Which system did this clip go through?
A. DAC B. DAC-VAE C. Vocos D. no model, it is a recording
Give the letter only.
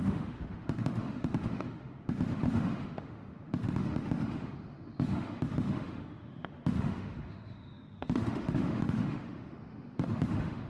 B